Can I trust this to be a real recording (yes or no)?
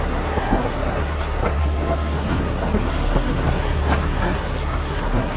no